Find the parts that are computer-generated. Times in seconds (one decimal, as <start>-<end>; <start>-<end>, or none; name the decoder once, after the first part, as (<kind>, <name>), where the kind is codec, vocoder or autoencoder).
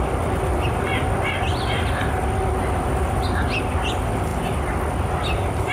none